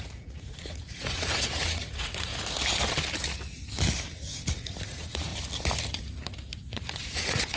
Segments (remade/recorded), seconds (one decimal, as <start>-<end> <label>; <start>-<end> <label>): 0.0-2.3 remade; 2.3-4.5 recorded; 4.5-5.3 remade; 5.3-6.6 recorded; 6.6-7.6 remade